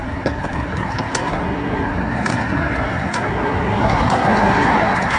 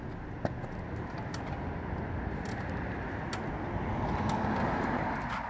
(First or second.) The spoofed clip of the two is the first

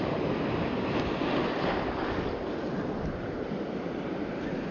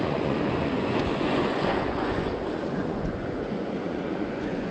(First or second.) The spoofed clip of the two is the second